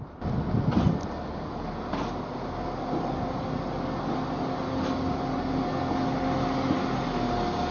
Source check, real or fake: real